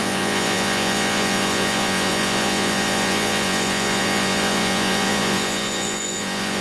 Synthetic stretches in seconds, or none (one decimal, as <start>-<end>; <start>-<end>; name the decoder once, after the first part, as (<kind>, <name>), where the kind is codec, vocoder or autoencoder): 0.0-6.6 (vocoder, Vocos)